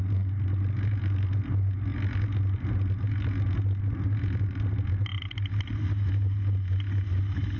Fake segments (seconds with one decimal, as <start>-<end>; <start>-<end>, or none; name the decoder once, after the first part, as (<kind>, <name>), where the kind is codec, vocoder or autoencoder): none